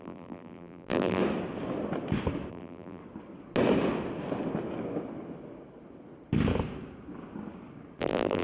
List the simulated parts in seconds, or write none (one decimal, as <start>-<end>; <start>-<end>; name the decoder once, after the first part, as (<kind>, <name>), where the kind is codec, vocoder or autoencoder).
0.0-1.2 (vocoder, BigVGAN v2); 2.5-3.0; 8.0-8.4